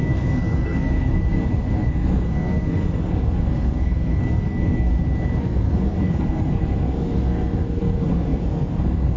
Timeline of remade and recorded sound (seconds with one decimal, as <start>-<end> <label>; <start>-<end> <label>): 0.0-4.9 remade; 4.9-5.4 recorded; 5.4-9.2 remade